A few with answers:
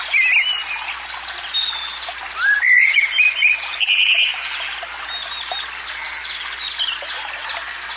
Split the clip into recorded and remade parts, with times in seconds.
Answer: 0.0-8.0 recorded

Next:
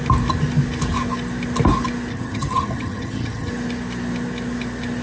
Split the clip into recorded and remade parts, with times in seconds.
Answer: 0.0-2.1 recorded; 2.1-3.5 remade; 3.5-5.0 recorded

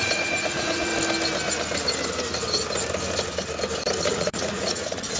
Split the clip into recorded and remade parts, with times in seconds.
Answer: 0.0-0.9 remade; 0.9-4.0 recorded; 4.0-5.2 remade

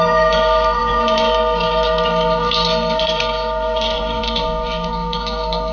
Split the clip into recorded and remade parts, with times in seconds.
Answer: 0.0-5.7 remade

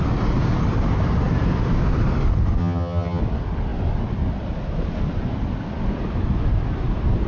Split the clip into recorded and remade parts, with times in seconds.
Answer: 0.0-2.6 recorded; 2.6-3.2 remade; 3.2-7.3 recorded

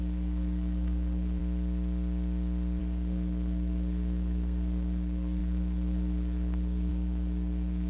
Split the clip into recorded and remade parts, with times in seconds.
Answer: 0.0-1.4 remade; 1.4-2.8 recorded; 2.8-7.9 remade

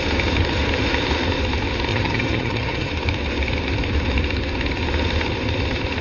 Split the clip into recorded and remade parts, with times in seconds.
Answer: 0.0-1.9 recorded; 1.9-2.9 remade; 2.9-6.0 recorded